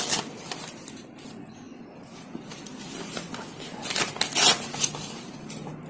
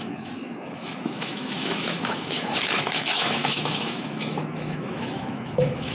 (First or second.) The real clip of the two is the first